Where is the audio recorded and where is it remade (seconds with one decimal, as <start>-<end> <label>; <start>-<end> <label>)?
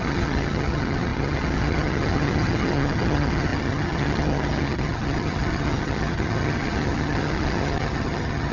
0.0-8.5 remade